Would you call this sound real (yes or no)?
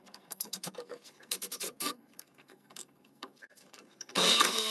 no